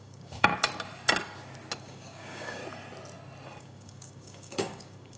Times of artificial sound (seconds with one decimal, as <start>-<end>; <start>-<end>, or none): 0.0-0.5; 1.8-2.6; 3.6-5.2